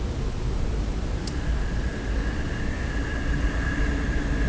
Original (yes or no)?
yes